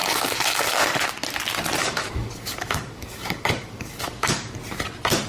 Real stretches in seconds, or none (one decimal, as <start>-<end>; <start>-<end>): 1.1-1.8; 4.5-5.3